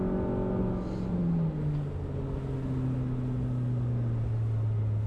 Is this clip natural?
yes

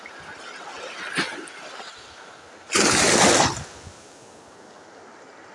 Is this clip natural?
yes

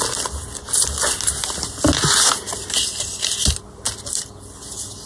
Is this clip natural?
yes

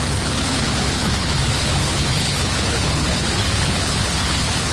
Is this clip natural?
no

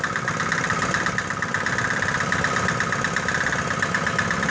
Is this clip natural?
yes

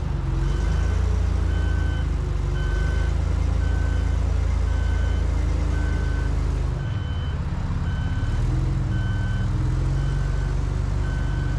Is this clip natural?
yes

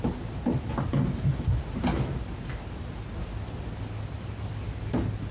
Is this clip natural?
yes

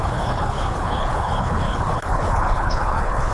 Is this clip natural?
no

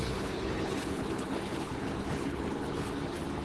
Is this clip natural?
no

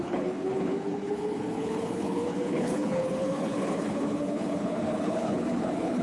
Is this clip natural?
no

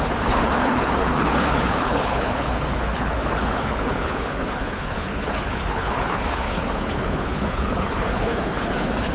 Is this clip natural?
no